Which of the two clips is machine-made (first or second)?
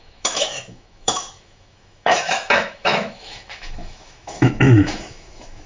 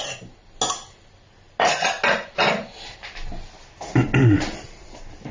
first